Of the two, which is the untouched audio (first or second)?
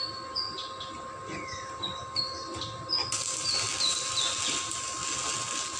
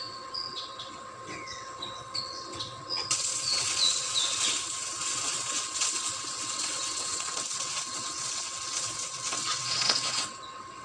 first